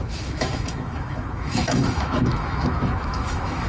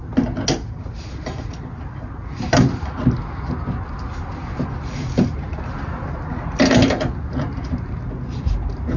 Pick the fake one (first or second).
first